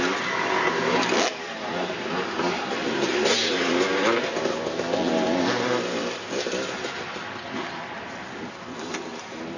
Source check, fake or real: real